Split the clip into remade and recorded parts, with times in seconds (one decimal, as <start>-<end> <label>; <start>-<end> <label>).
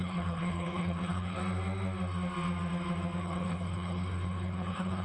0.0-1.4 remade; 1.4-3.2 recorded; 3.2-5.0 remade